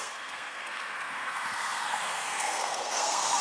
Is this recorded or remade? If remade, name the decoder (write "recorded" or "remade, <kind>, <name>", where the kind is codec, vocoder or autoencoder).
remade, codec, SNAC